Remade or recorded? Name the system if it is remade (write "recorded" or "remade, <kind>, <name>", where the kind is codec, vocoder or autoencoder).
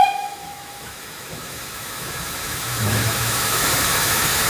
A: remade, autoencoder, DAC-VAE